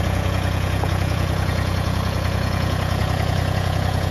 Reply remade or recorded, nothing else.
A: remade